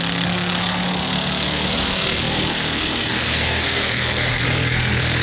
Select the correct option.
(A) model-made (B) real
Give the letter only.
A